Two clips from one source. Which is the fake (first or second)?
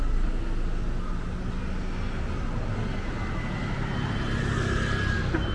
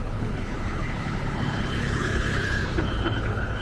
second